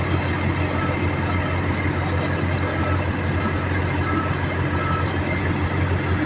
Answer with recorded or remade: recorded